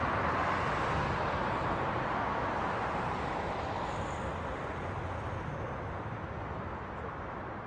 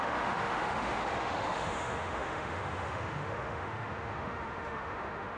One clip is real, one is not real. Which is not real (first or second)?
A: second